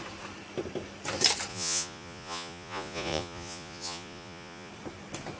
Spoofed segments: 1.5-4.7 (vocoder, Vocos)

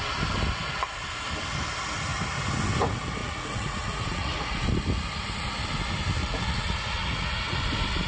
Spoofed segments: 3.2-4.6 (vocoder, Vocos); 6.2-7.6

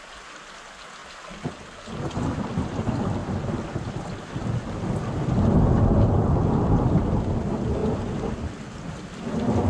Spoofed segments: none